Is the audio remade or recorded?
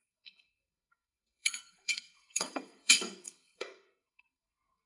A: remade